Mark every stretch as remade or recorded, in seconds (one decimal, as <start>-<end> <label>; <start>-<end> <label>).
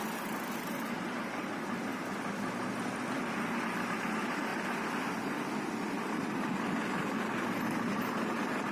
0.0-1.9 remade; 1.9-3.6 recorded; 3.6-4.5 remade; 4.5-5.7 recorded; 5.7-6.8 remade; 6.8-7.6 recorded; 7.6-8.7 remade